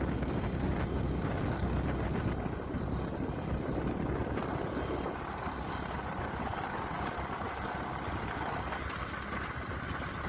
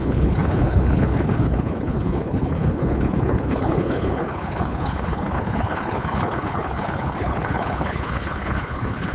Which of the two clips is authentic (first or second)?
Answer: first